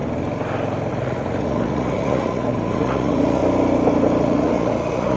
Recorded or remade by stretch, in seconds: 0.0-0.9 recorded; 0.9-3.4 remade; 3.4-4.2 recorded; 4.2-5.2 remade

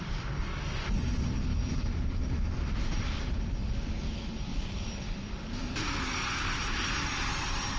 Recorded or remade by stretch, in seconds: 0.0-7.8 recorded

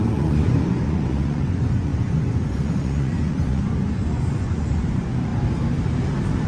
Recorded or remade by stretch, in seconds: 0.0-5.3 remade; 5.3-6.5 recorded

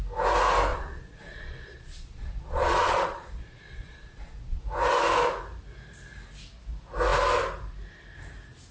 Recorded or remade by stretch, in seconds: 0.0-0.7 recorded; 0.7-4.6 remade; 4.6-8.7 recorded

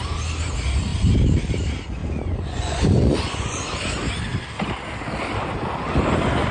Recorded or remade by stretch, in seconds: 0.0-2.0 recorded; 2.0-3.6 remade; 3.6-6.5 recorded

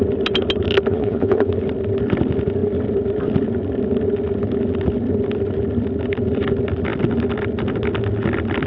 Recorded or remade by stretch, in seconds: 0.0-0.9 recorded; 0.9-1.5 remade; 1.5-8.7 recorded

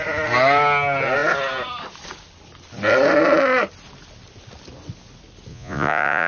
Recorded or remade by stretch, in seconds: 0.0-5.5 recorded; 5.5-6.3 remade